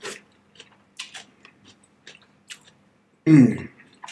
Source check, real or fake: real